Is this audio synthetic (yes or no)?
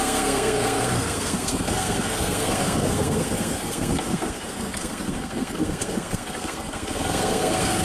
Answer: yes